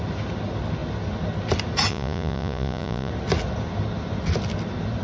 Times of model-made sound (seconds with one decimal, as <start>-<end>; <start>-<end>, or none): 1.9-3.1